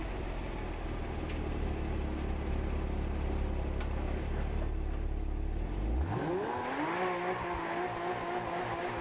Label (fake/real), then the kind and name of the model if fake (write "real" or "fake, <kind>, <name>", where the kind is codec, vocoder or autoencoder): real